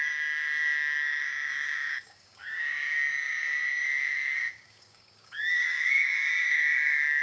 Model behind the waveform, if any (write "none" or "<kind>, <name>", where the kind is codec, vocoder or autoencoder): codec, DAC